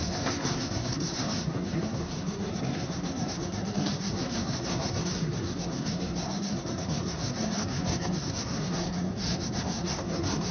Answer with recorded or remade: remade